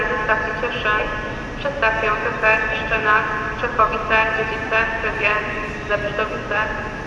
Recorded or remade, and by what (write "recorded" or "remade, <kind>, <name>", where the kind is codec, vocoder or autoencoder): recorded